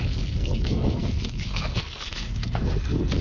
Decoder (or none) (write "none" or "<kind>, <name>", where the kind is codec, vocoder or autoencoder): codec, SNAC